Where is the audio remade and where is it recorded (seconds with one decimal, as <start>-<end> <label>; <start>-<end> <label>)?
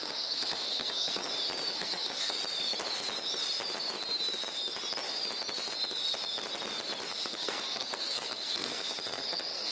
0.0-1.2 remade; 1.2-1.7 recorded; 1.7-2.4 remade; 2.4-7.1 recorded; 7.1-9.7 remade